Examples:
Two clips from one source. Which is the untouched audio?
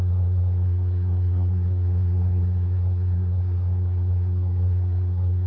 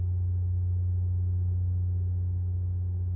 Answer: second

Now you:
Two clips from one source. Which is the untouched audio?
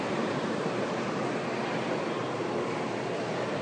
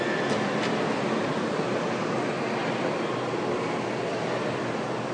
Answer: second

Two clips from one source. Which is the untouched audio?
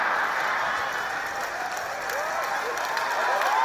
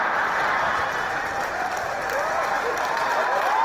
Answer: first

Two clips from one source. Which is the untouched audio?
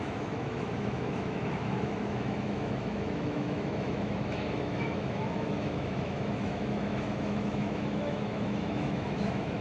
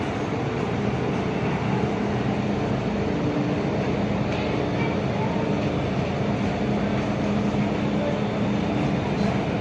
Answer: second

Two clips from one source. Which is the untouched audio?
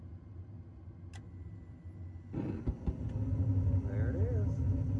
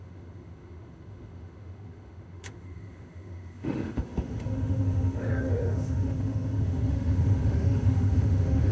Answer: first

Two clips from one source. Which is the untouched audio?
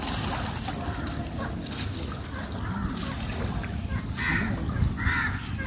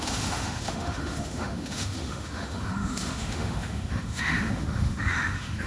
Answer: first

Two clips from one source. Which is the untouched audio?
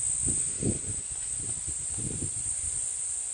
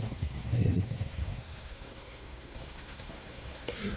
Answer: first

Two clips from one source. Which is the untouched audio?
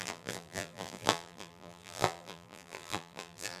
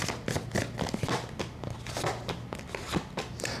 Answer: second